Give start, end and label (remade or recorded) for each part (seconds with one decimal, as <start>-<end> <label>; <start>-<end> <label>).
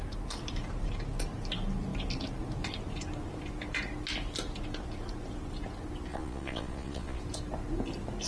0.0-6.1 recorded; 6.1-7.2 remade; 7.2-8.3 recorded